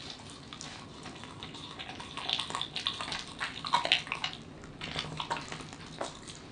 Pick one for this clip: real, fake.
real